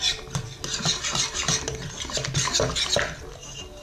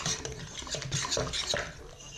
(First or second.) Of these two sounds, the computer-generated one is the second